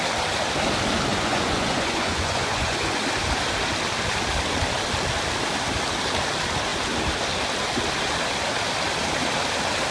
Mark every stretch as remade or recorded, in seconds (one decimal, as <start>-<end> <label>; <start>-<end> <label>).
0.0-1.1 recorded; 1.1-3.0 remade; 3.0-9.9 recorded